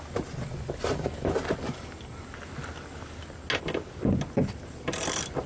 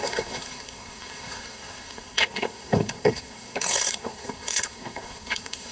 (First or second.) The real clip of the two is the first